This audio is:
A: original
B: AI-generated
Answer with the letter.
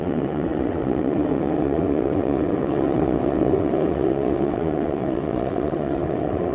B